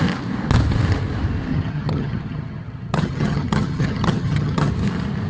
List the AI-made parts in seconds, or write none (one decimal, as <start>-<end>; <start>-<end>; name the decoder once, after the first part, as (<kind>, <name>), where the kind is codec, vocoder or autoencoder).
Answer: 1.5-4.7 (vocoder, HiFi-GAN)